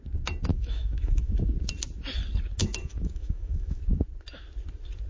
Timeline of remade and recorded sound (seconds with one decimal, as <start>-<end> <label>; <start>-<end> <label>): 0.0-0.5 recorded; 0.5-1.3 remade; 1.3-2.6 recorded; 2.6-3.8 remade; 3.8-5.1 recorded